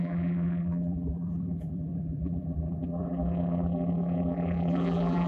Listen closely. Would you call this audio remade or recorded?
remade